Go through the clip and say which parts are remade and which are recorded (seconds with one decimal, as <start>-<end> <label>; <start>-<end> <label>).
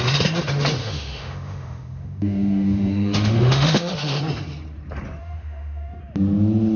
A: 0.0-0.8 recorded; 0.8-4.2 remade; 4.2-5.2 recorded; 5.2-6.0 remade; 6.0-6.8 recorded